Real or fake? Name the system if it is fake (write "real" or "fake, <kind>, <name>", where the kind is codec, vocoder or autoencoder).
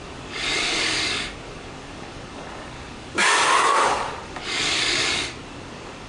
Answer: fake, codec, DAC